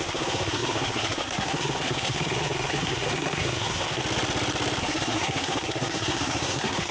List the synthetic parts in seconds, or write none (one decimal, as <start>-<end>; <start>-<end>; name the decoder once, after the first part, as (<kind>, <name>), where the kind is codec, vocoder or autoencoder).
0.0-4.0 (codec, SNAC); 4.8-6.9